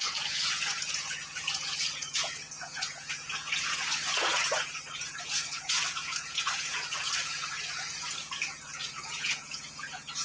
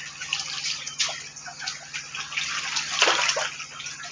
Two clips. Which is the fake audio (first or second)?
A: first